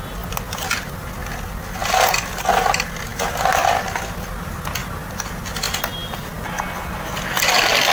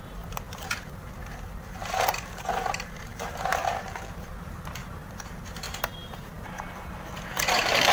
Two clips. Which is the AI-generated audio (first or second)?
second